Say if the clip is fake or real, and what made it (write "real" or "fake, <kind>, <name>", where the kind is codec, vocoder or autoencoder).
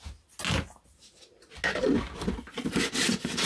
real